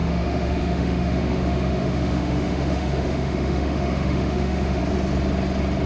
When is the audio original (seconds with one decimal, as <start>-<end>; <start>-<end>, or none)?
4.8-5.9